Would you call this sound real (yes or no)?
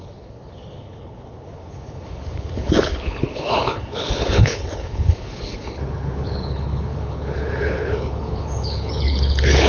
no